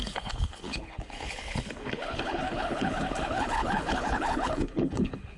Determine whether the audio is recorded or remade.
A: remade